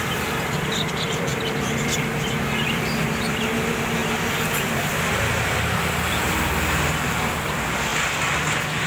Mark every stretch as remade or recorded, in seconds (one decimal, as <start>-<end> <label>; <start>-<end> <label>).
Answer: 0.0-7.9 remade; 7.9-8.9 recorded